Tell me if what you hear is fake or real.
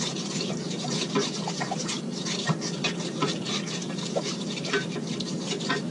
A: fake